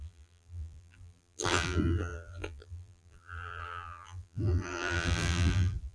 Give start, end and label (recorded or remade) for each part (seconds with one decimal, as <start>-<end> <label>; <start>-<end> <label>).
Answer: 0.0-5.9 remade